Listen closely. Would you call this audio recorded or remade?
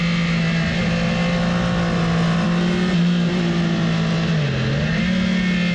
recorded